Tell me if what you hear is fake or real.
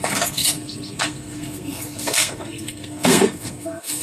fake